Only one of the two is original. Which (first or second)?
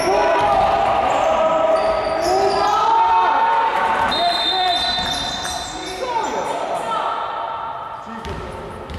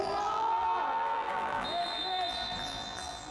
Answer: first